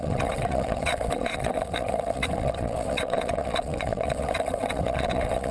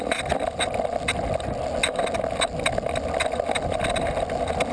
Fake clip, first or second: first